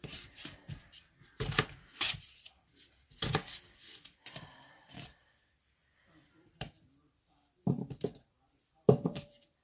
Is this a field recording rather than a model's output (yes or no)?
no